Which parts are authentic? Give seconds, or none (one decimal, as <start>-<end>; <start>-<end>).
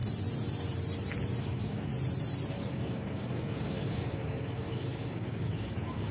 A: 0.0-1.4; 1.9-2.5